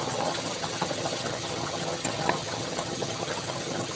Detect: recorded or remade remade